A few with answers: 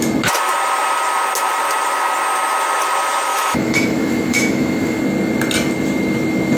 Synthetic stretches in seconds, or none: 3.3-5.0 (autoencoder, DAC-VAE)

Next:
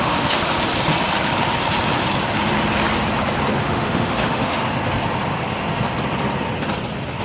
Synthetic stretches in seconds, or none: 0.0-0.4 (autoencoder, DAC-VAE); 3.6-4.6

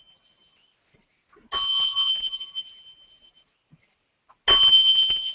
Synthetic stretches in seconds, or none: none

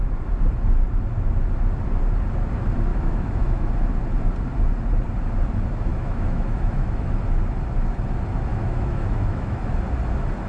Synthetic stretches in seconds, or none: 2.9-3.7 (autoencoder, DAC-VAE); 5.9-7.1; 8.5-9.6